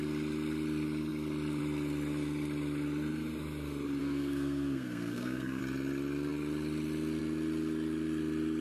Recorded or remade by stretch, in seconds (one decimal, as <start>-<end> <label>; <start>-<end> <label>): 0.0-4.0 recorded; 4.0-5.6 remade; 5.6-8.6 recorded